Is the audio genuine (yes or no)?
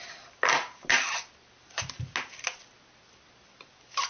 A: yes